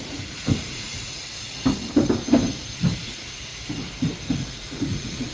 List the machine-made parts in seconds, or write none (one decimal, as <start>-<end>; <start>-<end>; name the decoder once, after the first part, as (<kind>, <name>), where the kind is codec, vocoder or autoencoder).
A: 0.0-1.3 (vocoder, Vocos); 3.0-3.5; 4.5-5.3